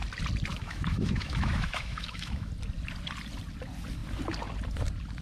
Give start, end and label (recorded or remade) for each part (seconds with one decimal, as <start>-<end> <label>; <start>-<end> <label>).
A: 0.0-0.5 recorded; 0.5-2.5 remade; 2.5-5.2 recorded